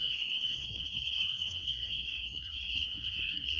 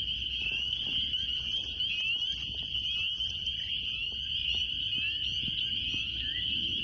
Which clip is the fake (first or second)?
first